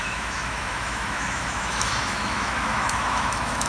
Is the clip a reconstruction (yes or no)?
yes